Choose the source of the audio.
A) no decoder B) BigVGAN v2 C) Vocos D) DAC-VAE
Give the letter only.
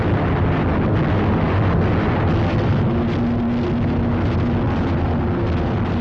A